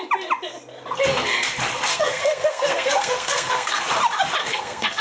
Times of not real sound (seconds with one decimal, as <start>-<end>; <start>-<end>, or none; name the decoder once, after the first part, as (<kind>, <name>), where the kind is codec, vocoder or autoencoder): 1.9-3.8 (codec, SNAC); 4.4-5.0